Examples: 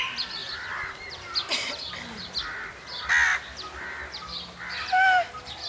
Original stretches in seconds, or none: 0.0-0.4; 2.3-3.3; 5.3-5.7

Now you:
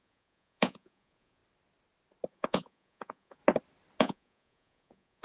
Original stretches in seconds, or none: 1.4-2.3; 3.4-4.0